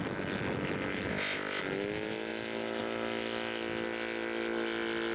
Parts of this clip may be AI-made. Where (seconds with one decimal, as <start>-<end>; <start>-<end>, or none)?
1.1-1.6